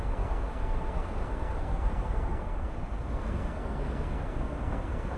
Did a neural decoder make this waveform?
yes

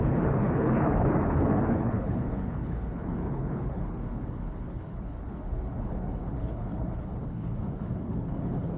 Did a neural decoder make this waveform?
yes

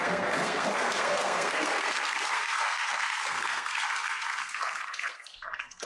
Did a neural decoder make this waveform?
yes